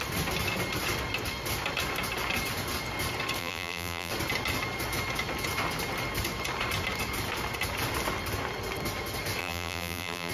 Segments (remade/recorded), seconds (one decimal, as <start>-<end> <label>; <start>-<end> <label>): 0.0-3.4 recorded; 3.4-4.1 remade; 4.1-9.4 recorded; 9.4-10.3 remade